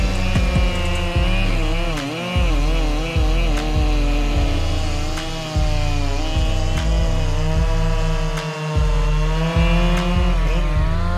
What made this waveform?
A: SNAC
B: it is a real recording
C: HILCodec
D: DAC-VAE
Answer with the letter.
B